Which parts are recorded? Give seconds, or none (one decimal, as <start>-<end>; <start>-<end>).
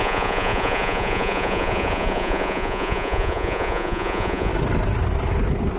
4.5-5.8